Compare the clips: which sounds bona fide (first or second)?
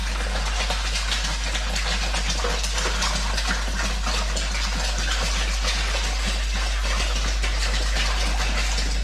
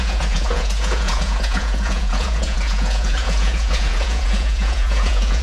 first